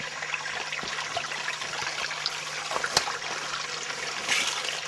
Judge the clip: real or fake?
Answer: real